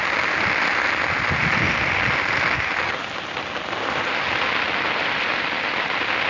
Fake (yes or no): no